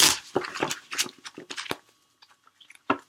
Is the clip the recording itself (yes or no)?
yes